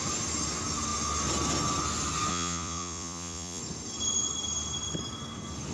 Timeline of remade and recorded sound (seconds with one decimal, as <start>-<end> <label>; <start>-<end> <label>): 0.0-2.3 recorded; 2.3-3.6 remade; 3.6-5.7 recorded